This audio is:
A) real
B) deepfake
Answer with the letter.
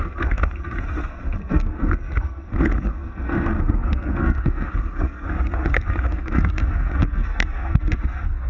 B